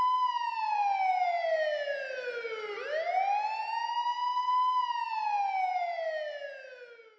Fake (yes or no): no